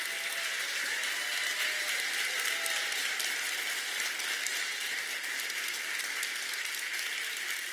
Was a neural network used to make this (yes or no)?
no